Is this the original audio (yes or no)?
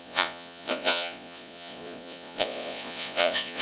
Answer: no